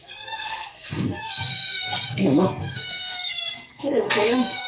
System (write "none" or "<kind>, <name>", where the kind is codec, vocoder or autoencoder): codec, SNAC